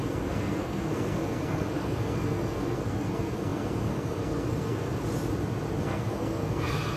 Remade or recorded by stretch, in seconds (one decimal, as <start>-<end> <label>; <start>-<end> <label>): 0.0-4.9 remade; 4.9-5.8 recorded; 5.8-7.0 remade